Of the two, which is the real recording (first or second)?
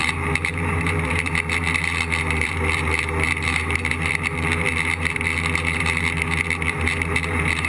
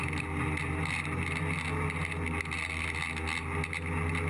second